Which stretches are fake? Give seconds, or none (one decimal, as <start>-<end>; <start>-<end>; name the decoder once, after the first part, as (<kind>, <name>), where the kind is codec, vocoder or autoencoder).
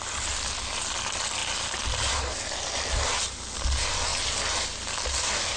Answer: none